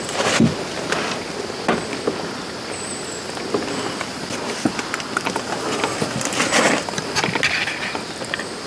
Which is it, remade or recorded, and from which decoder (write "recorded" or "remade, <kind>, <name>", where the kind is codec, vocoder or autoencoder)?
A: recorded